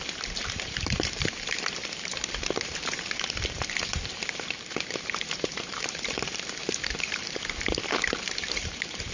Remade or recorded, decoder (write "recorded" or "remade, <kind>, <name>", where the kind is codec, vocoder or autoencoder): remade, vocoder, BigVGAN v2